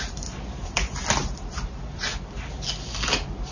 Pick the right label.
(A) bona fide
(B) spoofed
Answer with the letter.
A